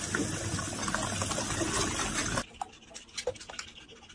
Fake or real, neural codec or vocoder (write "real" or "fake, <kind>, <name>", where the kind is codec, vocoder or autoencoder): real